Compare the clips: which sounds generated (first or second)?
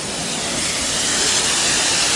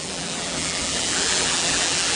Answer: second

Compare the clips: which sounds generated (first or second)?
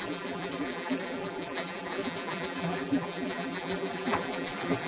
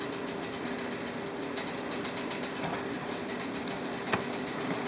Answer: first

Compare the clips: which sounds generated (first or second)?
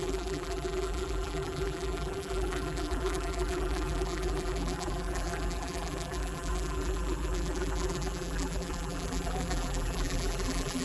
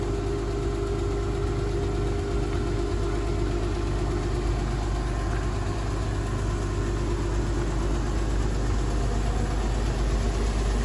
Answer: first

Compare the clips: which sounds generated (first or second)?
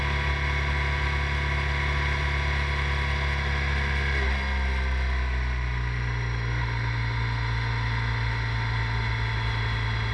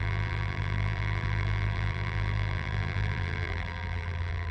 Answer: second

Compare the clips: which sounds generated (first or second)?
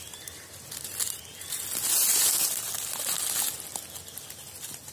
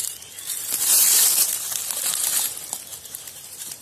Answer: second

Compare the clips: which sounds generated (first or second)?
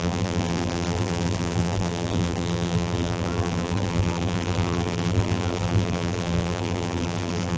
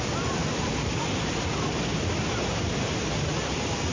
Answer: first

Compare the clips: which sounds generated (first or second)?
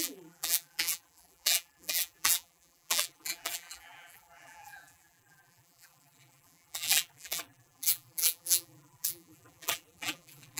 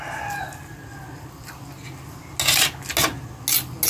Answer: first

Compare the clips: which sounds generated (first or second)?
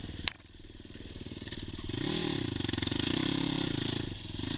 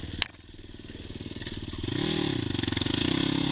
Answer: first